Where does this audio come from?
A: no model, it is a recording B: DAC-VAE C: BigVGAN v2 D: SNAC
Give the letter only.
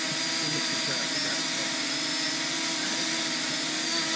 A